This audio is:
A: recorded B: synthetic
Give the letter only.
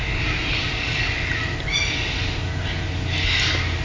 A